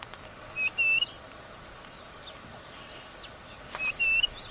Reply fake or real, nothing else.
real